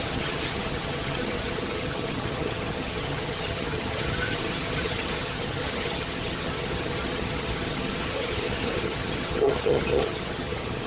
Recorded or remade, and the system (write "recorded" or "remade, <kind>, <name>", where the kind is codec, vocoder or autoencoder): remade, vocoder, HiFi-GAN